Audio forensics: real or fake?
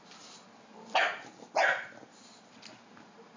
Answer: real